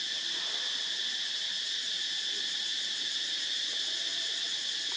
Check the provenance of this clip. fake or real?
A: real